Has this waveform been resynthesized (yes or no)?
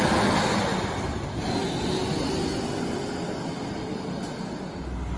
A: no